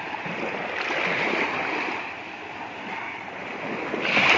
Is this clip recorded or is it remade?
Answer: recorded